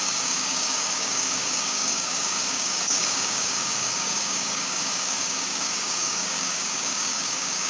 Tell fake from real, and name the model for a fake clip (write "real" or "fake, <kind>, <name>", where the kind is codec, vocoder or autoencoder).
fake, codec, DAC